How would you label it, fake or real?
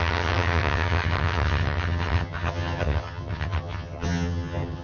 fake